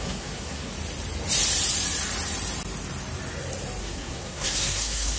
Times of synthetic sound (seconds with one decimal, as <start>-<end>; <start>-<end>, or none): 0.0-0.7; 3.8-5.2